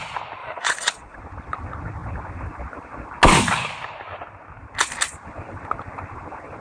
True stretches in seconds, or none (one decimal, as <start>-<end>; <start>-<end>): 0.0-0.4; 1.2-6.6